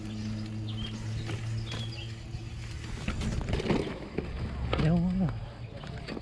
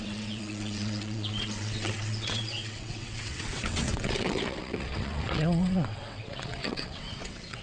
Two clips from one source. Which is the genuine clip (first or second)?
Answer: first